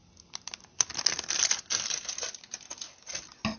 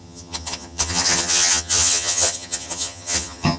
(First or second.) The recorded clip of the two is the first